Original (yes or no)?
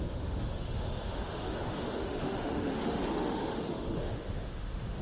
no